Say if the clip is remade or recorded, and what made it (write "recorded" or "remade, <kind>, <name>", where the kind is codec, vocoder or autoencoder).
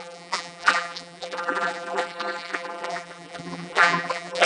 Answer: remade, vocoder, BigVGAN v2